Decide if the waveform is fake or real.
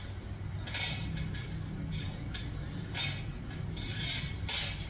real